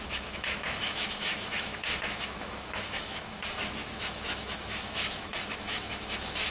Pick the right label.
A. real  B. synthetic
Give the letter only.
B